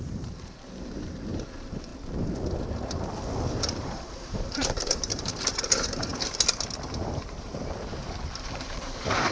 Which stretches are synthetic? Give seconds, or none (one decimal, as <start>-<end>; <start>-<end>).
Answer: 0.0-1.9; 3.7-6.1; 7.0-9.3